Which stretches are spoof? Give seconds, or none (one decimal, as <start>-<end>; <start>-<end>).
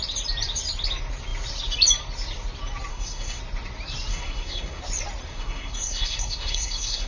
2.9-3.4; 4.1-4.8; 5.3-7.1